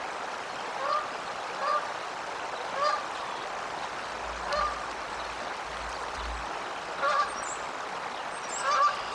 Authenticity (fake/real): real